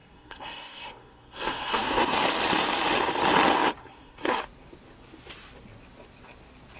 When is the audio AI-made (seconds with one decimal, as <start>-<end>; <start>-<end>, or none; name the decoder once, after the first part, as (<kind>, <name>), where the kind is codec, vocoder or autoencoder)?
0.0-2.2 (codec, SNAC); 3.8-4.4